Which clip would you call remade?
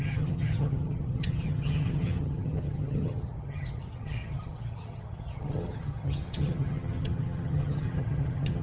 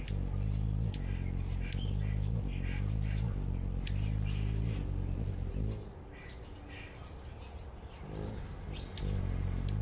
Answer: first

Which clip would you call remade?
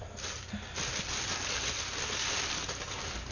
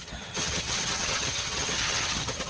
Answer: second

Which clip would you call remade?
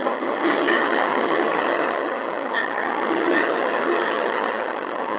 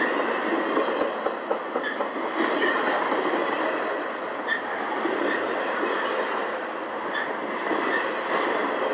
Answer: first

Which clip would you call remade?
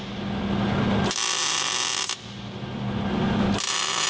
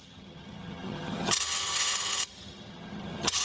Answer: second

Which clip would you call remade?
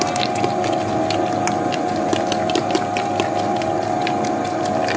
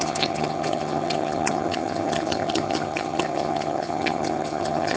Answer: second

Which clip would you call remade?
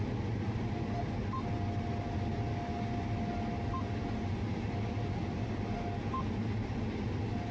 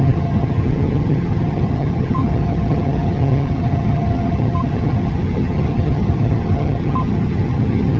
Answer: second